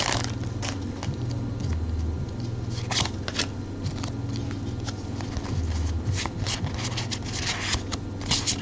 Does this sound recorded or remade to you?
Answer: recorded